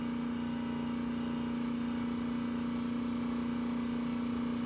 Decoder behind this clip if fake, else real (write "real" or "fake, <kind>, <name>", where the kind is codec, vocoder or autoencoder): real